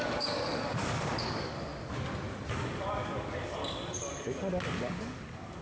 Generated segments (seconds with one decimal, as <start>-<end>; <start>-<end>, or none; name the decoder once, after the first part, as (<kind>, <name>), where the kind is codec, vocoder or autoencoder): 0.0-1.7 (codec, DAC); 2.5-3.6; 4.5-5.6